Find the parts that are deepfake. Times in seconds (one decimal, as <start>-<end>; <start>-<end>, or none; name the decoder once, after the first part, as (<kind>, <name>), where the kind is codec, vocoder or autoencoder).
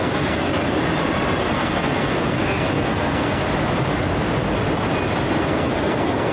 0.0-0.5 (codec, SNAC); 1.4-3.4; 5.4-6.3